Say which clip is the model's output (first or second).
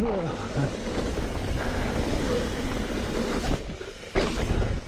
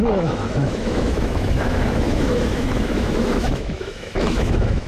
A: second